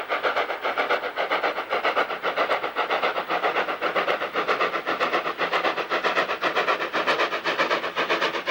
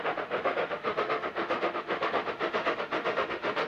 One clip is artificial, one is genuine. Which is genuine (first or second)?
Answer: first